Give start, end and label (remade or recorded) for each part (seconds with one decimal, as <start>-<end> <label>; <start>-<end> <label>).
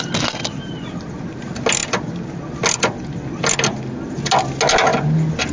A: 0.0-5.5 recorded